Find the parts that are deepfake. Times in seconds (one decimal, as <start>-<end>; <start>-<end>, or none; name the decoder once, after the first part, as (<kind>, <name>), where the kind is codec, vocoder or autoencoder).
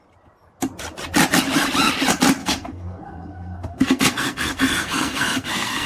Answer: 2.4-5.9 (codec, SNAC)